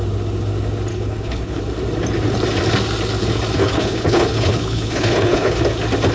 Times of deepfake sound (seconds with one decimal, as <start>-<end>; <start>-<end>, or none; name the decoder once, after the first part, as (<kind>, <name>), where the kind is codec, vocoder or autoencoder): 0.9-1.6 (codec, HILCodec); 3.6-5.6